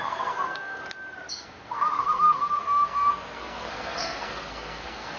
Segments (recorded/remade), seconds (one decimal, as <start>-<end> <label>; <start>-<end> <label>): 0.0-0.8 remade; 0.8-1.3 recorded; 1.3-5.2 remade